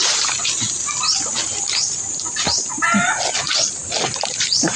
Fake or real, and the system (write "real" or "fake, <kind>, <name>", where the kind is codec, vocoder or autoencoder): real